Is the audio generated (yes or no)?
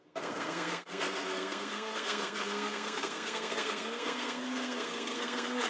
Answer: yes